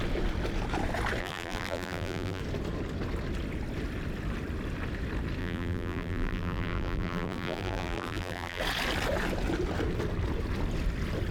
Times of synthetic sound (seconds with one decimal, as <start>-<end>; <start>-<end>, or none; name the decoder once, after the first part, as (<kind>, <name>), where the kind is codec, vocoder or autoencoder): 1.2-2.4 (vocoder, BigVGAN v2); 5.4-8.6